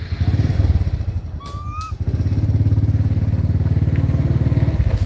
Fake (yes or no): no